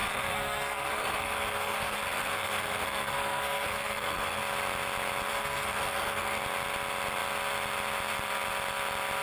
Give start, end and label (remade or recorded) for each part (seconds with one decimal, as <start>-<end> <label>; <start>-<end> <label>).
0.0-4.4 remade; 4.4-5.3 recorded; 5.3-6.4 remade; 6.4-9.2 recorded